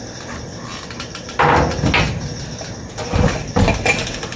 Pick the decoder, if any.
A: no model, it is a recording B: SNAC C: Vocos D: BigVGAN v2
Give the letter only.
A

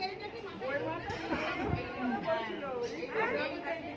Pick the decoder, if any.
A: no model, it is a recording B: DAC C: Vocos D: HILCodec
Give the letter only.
A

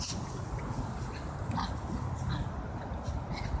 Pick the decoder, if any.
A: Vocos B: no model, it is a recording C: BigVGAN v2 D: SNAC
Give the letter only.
B